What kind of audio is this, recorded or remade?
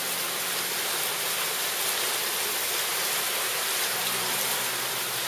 recorded